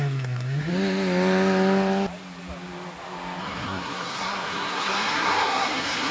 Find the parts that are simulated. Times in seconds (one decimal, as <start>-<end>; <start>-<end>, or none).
0.0-0.7; 3.4-6.1